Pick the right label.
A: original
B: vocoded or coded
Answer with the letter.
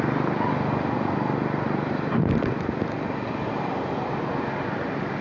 A